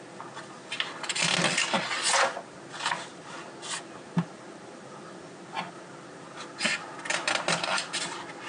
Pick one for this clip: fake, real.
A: real